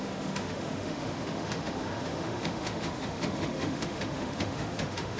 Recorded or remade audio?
remade